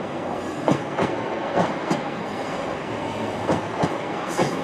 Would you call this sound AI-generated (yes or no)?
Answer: yes